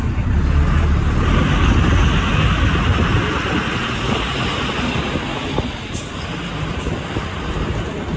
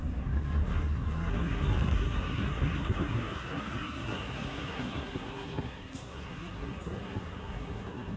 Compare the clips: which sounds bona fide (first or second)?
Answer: first